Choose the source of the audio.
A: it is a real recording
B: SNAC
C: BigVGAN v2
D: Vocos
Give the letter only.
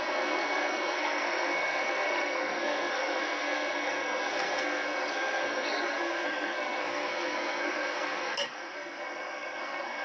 B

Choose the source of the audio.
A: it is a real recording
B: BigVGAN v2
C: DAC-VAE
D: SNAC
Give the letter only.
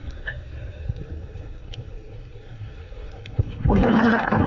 D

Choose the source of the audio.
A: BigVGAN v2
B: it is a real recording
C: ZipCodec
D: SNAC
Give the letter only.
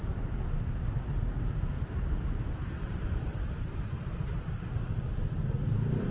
A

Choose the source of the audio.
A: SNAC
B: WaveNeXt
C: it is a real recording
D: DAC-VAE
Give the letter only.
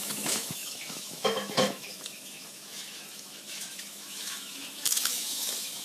D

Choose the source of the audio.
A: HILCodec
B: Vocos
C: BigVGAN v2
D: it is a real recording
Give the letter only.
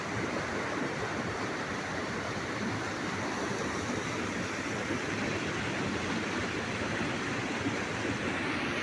D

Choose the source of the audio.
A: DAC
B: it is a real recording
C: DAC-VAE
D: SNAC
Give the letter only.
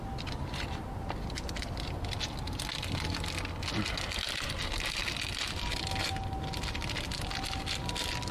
B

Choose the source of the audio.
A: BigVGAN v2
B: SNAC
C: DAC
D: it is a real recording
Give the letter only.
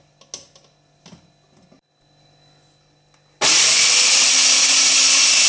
D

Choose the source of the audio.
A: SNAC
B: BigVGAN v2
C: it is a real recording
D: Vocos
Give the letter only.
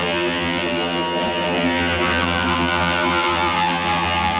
B